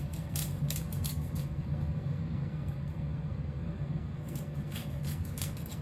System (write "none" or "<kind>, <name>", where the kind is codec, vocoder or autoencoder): codec, SNAC